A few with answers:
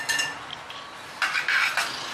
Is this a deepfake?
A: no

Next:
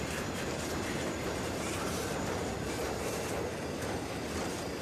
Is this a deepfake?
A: yes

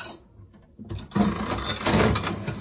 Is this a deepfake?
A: no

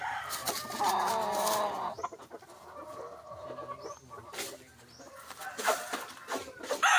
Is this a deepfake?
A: no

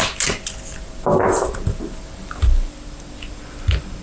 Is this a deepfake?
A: no